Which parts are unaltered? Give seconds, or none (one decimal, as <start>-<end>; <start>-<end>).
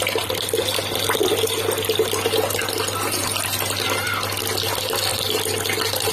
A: 0.0-6.1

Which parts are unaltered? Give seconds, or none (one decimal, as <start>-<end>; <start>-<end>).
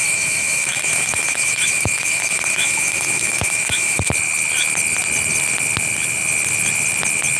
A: 4.1-7.4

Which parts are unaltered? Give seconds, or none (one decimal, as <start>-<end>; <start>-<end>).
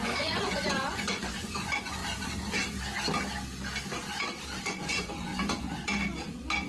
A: 2.0-4.6; 5.3-6.7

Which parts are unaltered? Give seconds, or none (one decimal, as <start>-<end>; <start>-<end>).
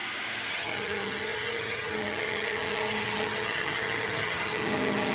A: 0.0-0.5